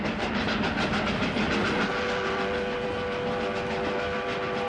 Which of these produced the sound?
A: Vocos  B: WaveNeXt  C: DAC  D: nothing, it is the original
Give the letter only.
D